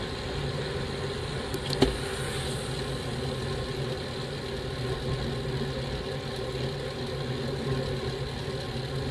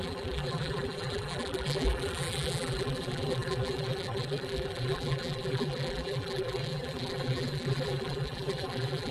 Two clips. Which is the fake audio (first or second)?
second